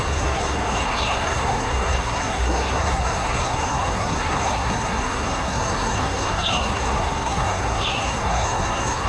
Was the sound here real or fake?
fake